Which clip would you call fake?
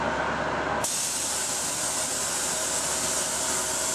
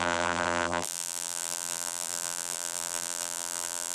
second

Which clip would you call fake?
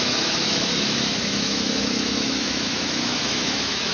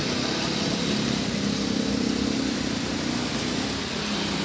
first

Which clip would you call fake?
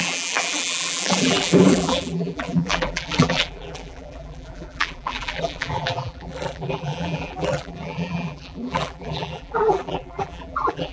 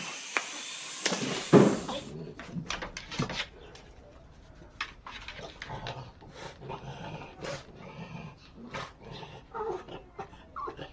first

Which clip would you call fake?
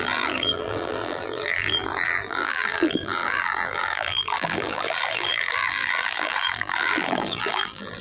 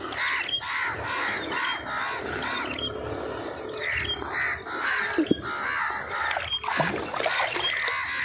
first